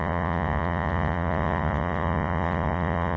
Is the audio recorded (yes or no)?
no